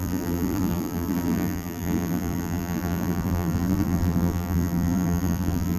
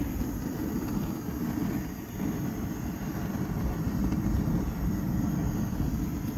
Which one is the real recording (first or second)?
second